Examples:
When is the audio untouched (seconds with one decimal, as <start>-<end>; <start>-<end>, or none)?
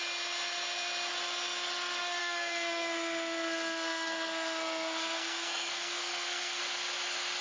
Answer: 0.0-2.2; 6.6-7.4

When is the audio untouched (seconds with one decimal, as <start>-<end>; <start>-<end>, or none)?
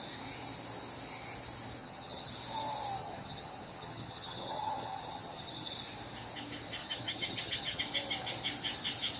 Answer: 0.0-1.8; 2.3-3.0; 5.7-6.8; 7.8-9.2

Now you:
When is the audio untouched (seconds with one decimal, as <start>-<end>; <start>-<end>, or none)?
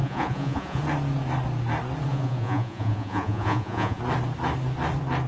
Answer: 0.8-2.1; 4.0-5.3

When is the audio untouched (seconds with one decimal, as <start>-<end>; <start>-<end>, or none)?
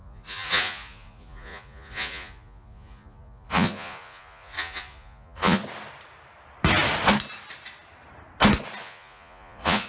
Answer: 5.6-8.8